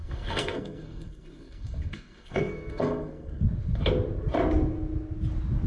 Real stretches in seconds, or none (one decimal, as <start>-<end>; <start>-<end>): 3.4-5.7